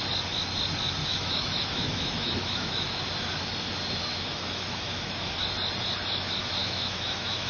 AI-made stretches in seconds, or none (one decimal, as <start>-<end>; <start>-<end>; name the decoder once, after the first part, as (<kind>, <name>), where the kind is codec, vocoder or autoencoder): 1.0-3.0 (autoencoder, DAC-VAE); 4.0-5.3; 6.6-7.5